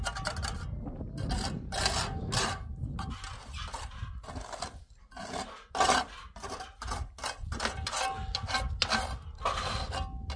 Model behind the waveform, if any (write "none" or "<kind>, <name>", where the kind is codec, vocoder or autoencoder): none